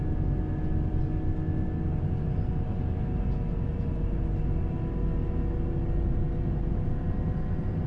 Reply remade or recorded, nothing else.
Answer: recorded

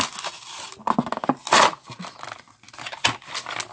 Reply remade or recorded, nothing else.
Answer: recorded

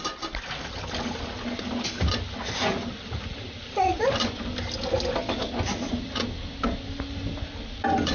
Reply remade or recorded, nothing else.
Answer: recorded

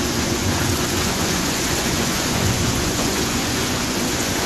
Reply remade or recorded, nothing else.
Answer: remade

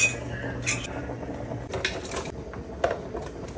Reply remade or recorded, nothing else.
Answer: recorded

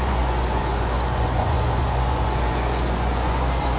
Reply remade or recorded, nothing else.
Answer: remade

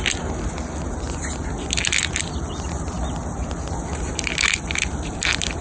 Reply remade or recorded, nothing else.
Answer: recorded